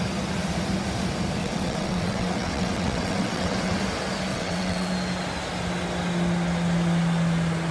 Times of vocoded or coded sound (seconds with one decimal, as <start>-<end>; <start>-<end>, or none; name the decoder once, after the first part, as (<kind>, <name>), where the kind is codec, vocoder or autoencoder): 1.4-3.8 (vocoder, WaveNeXt); 4.3-4.9